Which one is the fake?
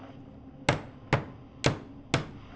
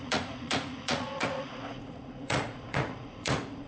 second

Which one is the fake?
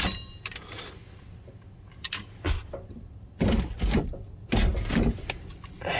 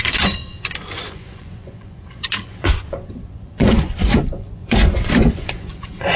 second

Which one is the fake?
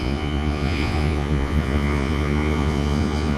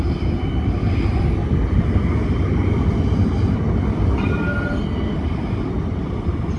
first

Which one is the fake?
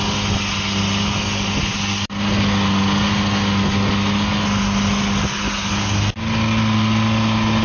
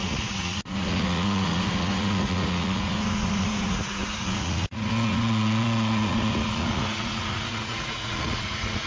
second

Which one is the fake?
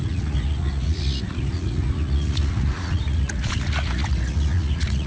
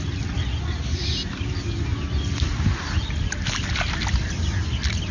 first